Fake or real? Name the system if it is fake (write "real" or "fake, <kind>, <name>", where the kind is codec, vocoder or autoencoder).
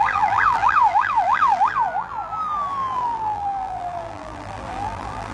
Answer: fake, vocoder, BigVGAN v2